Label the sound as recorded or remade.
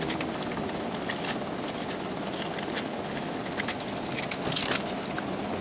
recorded